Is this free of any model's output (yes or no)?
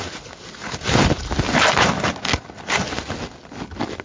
yes